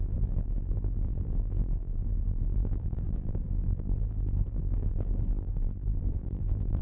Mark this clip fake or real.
fake